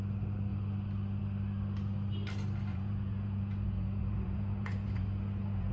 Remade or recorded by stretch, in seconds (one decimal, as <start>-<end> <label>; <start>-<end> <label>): 0.0-2.7 recorded; 2.7-5.7 remade